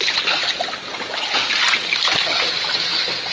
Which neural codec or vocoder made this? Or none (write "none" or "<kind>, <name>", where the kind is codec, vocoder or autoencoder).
none